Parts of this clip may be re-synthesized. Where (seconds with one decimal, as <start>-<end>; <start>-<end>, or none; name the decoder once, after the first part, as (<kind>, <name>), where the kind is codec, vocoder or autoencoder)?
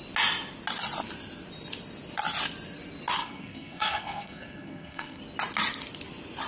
3.2-5.2 (codec, SNAC)